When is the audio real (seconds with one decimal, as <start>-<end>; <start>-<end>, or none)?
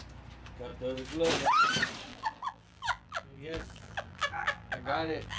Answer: 0.0-2.1